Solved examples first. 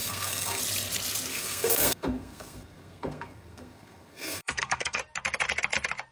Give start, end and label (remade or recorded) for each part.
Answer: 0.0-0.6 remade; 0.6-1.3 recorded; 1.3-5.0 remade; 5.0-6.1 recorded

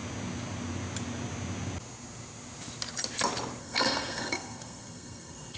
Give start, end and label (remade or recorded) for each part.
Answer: 0.0-3.6 recorded; 3.6-5.6 remade

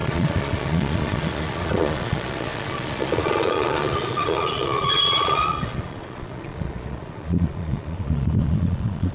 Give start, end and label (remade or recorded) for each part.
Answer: 0.0-9.1 remade

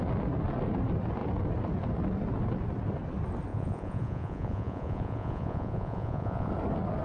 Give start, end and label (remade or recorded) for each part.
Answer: 0.0-3.5 recorded; 3.5-6.5 remade; 6.5-7.0 recorded

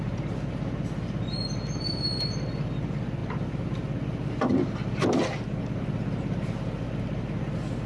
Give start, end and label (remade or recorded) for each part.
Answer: 0.0-7.9 recorded

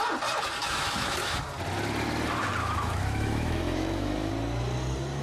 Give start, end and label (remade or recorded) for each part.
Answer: 0.0-0.6 recorded; 0.6-1.4 remade; 1.4-2.6 recorded; 2.6-4.3 remade; 4.3-5.2 recorded

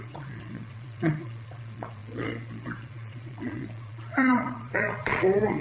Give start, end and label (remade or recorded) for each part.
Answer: 0.0-5.6 remade

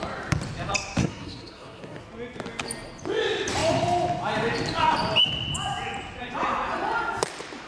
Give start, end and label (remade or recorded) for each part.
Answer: 0.0-1.0 recorded; 1.0-2.0 remade; 2.0-7.7 recorded